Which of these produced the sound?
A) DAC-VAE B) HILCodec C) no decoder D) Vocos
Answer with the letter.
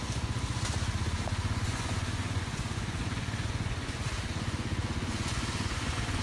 D